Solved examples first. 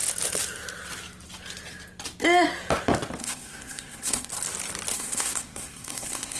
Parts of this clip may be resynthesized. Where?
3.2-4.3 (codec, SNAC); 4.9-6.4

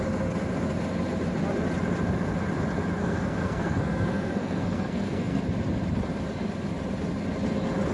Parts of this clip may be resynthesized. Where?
3.0-5.4 (codec, SNAC)

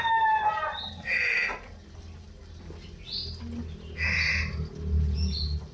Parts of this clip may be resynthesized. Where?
none